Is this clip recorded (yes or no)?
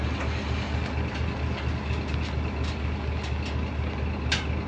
yes